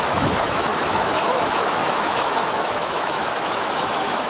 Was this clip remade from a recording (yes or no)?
yes